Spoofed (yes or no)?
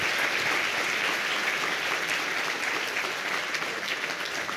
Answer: no